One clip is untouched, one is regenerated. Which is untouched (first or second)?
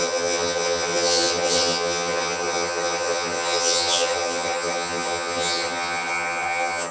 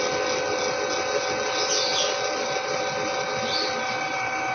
second